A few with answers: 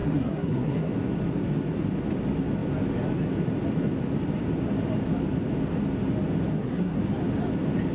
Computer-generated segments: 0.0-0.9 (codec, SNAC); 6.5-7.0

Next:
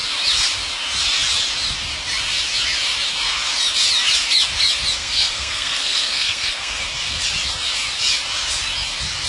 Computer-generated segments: 5.0-6.8 (codec, SNAC)

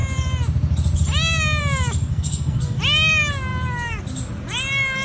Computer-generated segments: 2.1-2.8 (codec, SNAC)

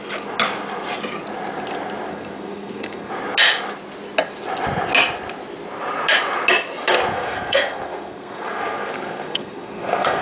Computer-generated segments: 2.1-3.1 (codec, SNAC); 7.1-10.2

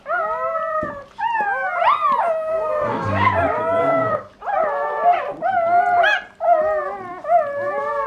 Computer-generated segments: 2.5-3.3 (codec, SNAC); 3.8-4.3

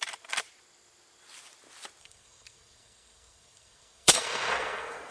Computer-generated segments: 2.0-5.1 (codec, SNAC)

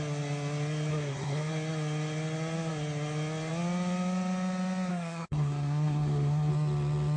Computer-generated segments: 0.9-1.5 (codec, SNAC); 4.9-6.5